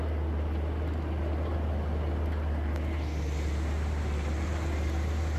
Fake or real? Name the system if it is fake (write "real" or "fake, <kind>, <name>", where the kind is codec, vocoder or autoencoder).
real